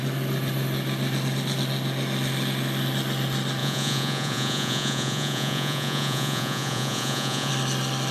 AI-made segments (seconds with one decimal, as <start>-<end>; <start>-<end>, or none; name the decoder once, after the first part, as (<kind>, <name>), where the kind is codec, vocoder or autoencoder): 3.6-7.5 (vocoder, Vocos)